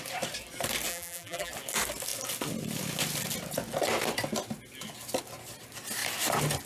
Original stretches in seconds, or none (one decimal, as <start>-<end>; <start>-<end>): 0.0-0.9; 1.5-6.7